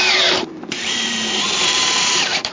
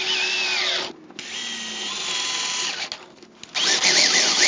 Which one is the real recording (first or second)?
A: second